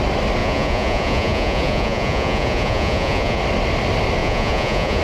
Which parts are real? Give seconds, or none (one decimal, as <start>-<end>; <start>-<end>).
0.0-0.4; 3.4-4.2